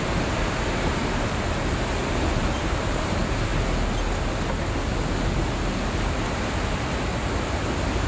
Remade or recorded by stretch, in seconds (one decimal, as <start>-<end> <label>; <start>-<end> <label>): 0.0-3.5 remade; 3.5-8.1 recorded